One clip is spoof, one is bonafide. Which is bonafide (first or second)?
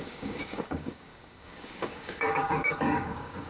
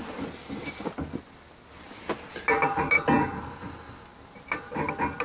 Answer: second